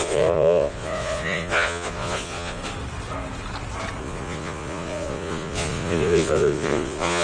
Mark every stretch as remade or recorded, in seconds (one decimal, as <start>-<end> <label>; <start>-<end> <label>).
0.0-2.6 remade; 2.6-4.0 recorded; 4.0-7.2 remade